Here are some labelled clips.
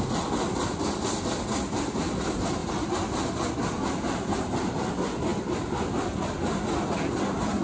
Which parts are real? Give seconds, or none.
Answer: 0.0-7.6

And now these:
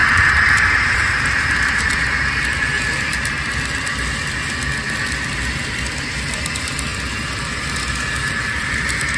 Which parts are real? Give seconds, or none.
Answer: 2.2-9.2

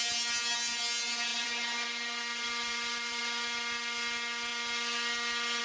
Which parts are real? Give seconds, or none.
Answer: 0.0-1.3; 3.2-5.6

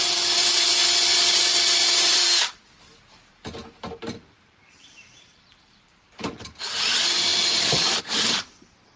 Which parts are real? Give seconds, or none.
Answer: 0.8-1.3

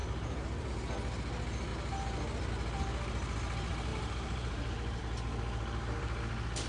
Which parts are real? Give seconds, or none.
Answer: 0.7-3.9; 5.0-6.7

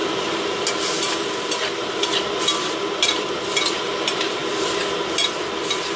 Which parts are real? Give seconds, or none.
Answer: 0.0-6.0